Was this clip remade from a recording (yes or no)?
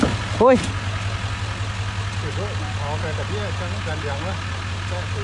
no